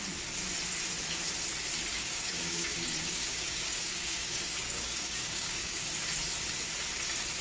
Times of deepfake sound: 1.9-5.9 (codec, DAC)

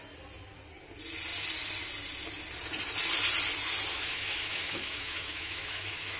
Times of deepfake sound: 3.9-6.2 (autoencoder, DAC-VAE)